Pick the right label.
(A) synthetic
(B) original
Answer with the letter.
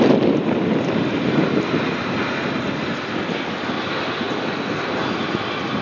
A